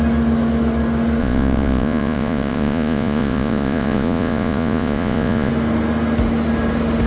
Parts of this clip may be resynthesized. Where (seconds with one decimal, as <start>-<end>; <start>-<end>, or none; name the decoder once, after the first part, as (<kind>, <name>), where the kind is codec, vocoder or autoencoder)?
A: 1.2-5.5 (vocoder, Vocos)